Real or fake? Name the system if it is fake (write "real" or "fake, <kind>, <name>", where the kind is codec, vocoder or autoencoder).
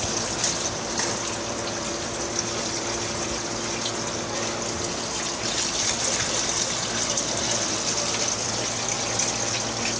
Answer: real